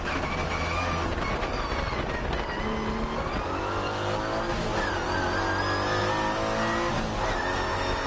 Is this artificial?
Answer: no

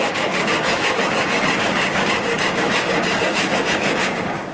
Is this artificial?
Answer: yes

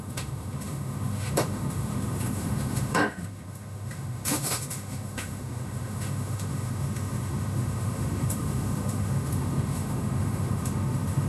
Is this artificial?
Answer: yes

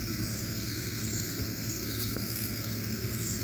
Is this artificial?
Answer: yes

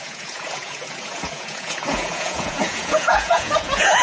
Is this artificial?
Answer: yes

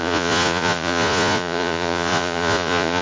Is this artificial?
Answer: yes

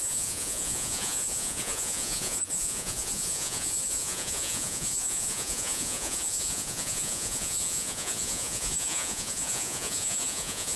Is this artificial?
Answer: yes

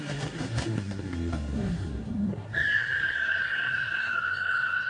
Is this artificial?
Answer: yes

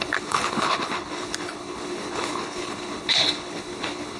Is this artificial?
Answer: yes